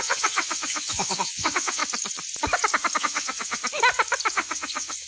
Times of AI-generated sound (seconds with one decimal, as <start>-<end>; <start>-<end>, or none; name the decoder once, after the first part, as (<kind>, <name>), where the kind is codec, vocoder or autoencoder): 0.0-1.8 (vocoder, WaveNeXt); 3.0-3.6; 4.3-5.1